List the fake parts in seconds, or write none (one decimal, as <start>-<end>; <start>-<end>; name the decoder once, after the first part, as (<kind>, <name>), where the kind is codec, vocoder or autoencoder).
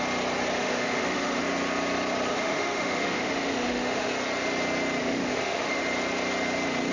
0.6-1.4 (autoencoder, DAC-VAE); 2.3-4.1; 5.0-5.8